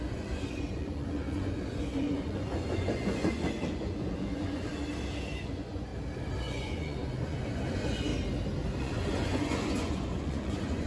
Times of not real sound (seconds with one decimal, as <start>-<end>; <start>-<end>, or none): 0.0-4.7; 5.4-5.9; 6.4-8.1; 8.8-10.9